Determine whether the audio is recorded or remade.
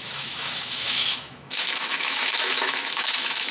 remade